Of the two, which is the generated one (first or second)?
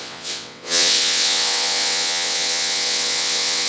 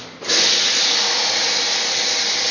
first